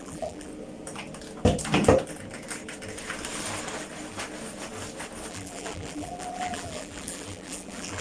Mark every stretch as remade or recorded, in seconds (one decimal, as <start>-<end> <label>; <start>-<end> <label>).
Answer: 0.0-0.5 remade; 0.5-5.3 recorded; 5.3-8.0 remade